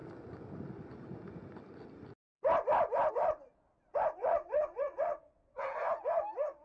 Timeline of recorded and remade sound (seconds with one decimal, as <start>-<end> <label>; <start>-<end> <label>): 0.0-4.2 recorded; 4.2-5.8 remade; 5.8-6.6 recorded

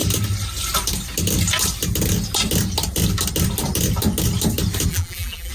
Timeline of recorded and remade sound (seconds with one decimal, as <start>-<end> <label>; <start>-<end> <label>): 0.0-4.9 recorded; 4.9-5.5 remade

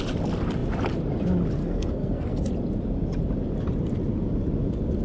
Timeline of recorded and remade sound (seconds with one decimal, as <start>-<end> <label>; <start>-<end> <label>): 0.0-1.6 recorded; 1.6-2.4 remade; 2.4-5.0 recorded